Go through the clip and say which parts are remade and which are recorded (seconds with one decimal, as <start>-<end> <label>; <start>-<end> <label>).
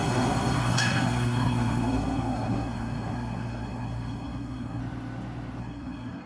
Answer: 0.0-4.8 remade; 4.8-5.6 recorded; 5.6-6.3 remade